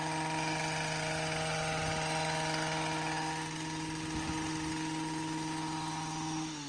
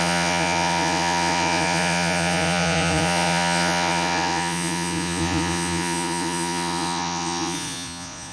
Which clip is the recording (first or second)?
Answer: first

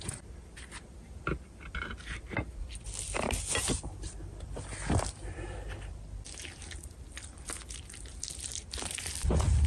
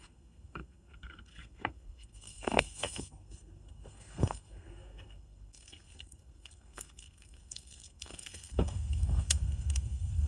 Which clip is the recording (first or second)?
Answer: first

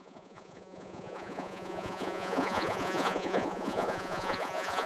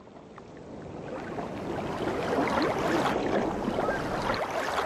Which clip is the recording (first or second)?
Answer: second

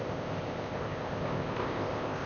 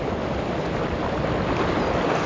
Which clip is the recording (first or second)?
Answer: second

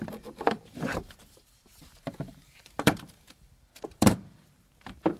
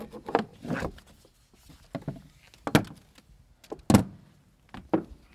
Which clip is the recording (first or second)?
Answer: second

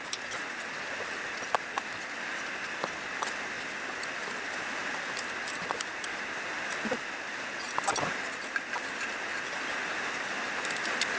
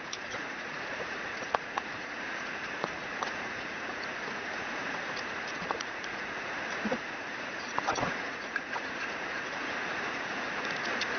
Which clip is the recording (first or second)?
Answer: first